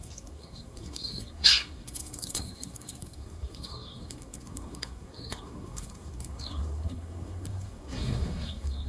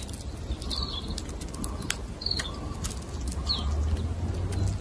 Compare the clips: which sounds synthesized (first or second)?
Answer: first